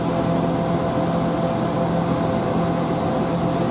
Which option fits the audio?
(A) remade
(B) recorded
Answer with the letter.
B